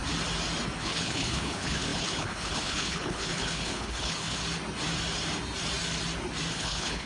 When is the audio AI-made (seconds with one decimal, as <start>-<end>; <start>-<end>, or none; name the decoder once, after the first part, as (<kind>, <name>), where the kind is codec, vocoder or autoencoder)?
0.8-4.4 (codec, HILCodec); 6.5-7.1